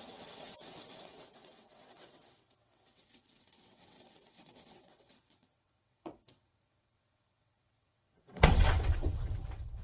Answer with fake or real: fake